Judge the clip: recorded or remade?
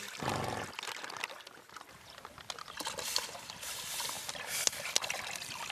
recorded